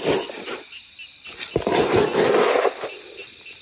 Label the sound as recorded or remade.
recorded